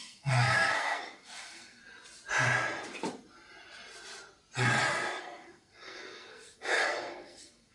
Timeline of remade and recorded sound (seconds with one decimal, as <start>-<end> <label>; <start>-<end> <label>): 0.0-1.8 remade; 1.8-5.2 recorded; 5.2-7.7 remade